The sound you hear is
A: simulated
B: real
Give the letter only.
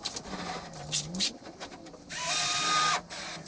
B